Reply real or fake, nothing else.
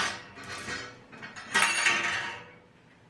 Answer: real